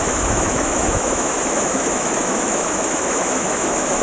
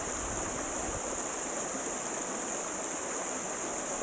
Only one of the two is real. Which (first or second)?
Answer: second